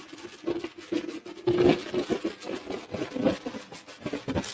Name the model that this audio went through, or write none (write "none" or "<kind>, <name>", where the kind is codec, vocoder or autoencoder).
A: none